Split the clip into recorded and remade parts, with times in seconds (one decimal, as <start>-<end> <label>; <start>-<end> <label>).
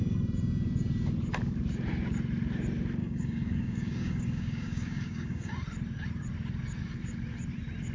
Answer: 0.0-3.0 recorded; 3.0-5.5 remade; 5.5-7.9 recorded